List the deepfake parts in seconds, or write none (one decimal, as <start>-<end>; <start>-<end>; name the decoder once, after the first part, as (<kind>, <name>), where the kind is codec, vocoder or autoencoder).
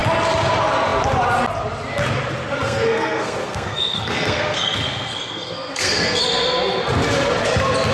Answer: 2.6-6.2 (codec, SNAC)